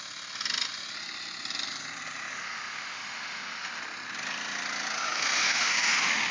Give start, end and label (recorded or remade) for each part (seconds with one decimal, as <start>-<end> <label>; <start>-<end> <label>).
0.0-2.3 recorded; 2.3-3.8 remade; 3.8-5.0 recorded; 5.0-6.3 remade